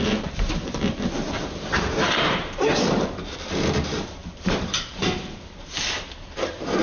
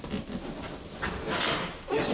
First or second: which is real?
second